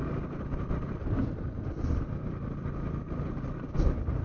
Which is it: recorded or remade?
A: remade